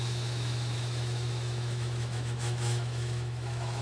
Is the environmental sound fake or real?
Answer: fake